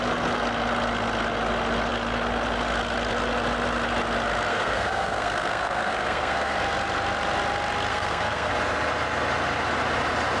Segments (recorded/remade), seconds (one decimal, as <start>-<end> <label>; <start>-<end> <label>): 0.0-4.5 recorded; 4.5-6.6 remade; 6.6-7.9 recorded; 7.9-8.5 remade; 8.5-10.4 recorded